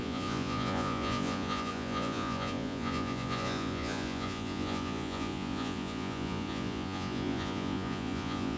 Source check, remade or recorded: remade